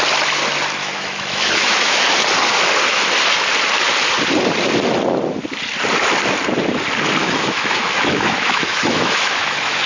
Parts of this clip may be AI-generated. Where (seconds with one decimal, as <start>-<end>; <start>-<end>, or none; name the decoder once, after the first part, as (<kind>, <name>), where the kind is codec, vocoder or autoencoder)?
0.8-2.1 (autoencoder, DAC-VAE); 7.2-9.9